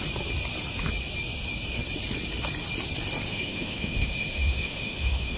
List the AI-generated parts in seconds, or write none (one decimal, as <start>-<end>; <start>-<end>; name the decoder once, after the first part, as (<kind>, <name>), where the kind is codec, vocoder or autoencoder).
3.3-5.4 (autoencoder, DAC-VAE)